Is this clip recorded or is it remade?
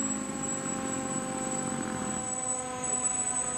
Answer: recorded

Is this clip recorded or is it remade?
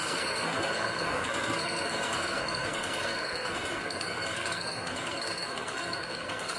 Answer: remade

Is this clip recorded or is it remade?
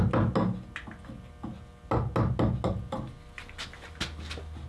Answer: recorded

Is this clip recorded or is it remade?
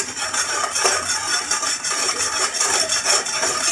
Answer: remade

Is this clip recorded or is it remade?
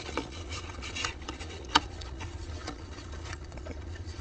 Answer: remade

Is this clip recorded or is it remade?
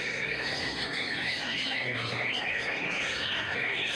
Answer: remade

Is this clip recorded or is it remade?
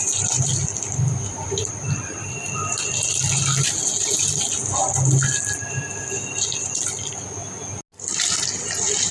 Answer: recorded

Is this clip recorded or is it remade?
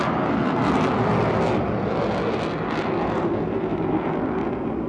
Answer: recorded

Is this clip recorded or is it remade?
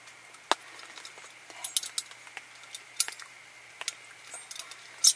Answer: recorded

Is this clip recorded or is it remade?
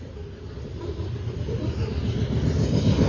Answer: recorded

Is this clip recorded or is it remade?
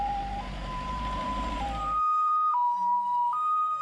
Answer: remade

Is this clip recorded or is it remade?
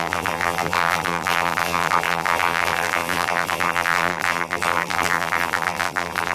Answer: remade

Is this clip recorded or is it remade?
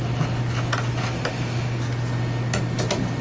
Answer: recorded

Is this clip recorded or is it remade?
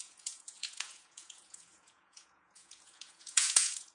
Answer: remade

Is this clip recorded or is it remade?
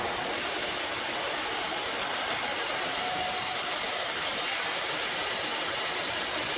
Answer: recorded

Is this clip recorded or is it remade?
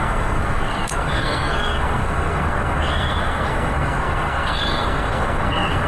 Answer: remade